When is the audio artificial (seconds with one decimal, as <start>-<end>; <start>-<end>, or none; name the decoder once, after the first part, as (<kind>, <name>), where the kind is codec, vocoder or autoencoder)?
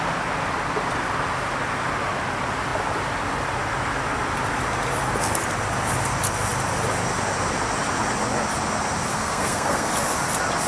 9.1-9.9 (codec, SNAC)